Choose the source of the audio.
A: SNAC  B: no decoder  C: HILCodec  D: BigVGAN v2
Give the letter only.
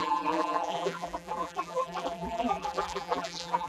D